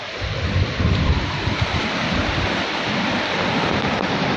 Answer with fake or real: fake